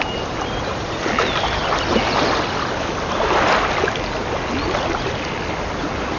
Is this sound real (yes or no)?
yes